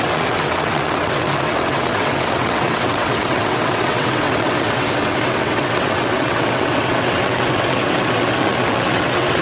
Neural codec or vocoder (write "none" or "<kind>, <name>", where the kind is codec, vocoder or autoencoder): vocoder, WaveNeXt